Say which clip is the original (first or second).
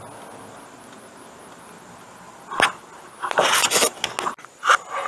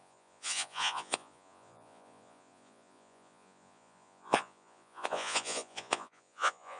first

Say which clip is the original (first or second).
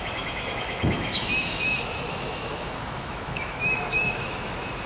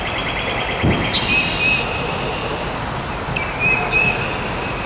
second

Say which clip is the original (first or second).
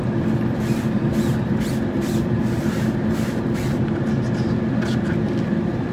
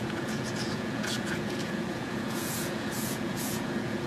first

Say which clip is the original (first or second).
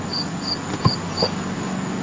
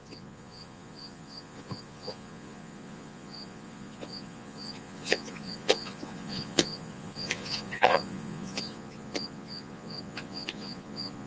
first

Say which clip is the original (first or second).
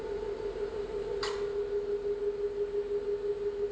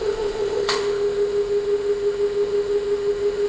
first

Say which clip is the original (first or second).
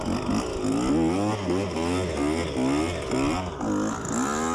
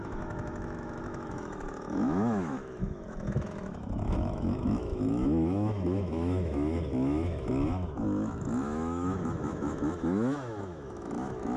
first